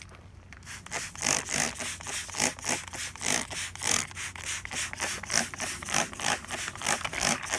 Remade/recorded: recorded